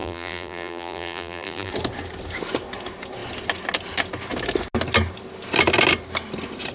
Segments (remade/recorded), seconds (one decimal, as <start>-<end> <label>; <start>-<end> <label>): 0.0-1.7 remade; 1.7-6.7 recorded